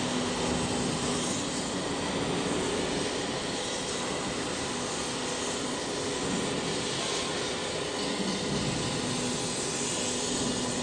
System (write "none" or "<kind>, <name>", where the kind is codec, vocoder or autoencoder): none